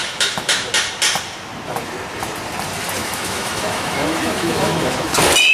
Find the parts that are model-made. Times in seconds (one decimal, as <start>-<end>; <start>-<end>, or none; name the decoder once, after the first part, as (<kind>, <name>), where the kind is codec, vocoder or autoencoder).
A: 0.0-0.7 (autoencoder, DAC-VAE); 3.0-5.1